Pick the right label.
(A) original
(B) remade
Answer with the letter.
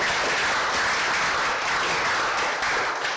A